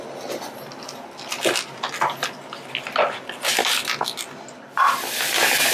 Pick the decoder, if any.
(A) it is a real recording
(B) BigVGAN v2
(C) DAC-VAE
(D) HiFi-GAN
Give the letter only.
A